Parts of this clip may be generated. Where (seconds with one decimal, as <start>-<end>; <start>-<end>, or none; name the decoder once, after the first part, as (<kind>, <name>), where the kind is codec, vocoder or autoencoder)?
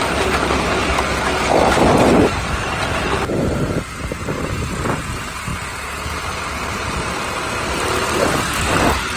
5.5-7.2 (vocoder, BigVGAN v2)